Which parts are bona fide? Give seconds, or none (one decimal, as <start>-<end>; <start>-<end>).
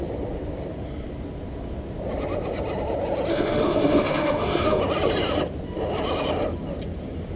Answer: 0.0-3.3; 4.8-7.4